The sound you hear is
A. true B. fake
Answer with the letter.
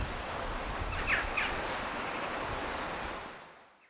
A